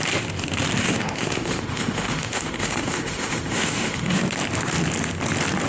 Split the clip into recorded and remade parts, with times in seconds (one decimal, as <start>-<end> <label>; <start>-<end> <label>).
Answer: 0.0-0.8 recorded; 0.8-4.2 remade; 4.2-5.7 recorded